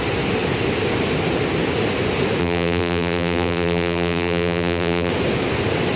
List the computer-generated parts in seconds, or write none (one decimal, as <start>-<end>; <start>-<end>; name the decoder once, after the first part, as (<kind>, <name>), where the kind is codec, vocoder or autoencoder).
2.4-5.1 (vocoder, BigVGAN v2)